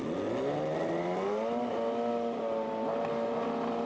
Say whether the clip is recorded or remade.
recorded